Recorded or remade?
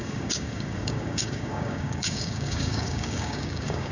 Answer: remade